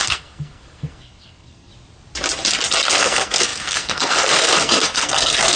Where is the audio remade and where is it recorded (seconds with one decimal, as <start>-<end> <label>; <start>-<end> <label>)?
0.0-1.7 remade; 1.7-2.9 recorded; 2.9-5.6 remade